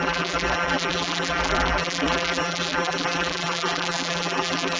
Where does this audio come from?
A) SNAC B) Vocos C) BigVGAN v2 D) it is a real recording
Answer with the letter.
C